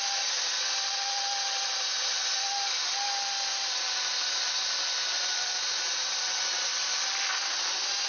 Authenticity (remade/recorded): recorded